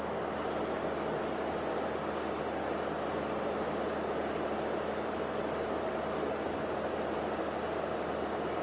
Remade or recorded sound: recorded